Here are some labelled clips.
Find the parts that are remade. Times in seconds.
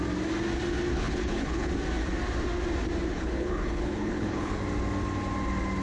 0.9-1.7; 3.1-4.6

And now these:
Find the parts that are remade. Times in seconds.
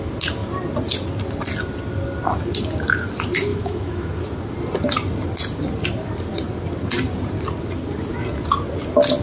3.5-4.2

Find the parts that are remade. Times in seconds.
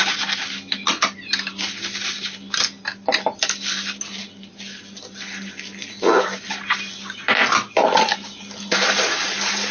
none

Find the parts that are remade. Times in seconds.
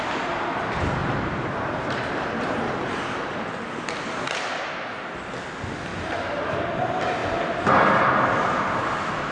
1.0-3.6; 5.9-6.8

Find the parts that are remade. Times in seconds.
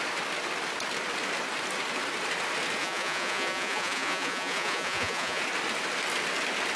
2.8-5.4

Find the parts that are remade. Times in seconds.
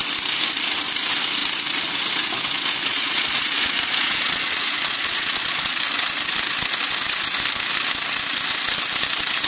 2.9-5.8